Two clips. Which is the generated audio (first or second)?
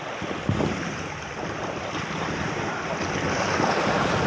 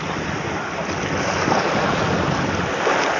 first